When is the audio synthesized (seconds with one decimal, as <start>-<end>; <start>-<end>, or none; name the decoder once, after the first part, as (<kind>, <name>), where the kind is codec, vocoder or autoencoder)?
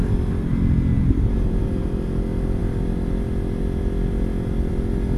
0.9-2.1 (vocoder, BigVGAN v2)